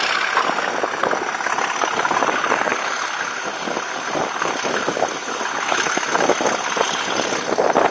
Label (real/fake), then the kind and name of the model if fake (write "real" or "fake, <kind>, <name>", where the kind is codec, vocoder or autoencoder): real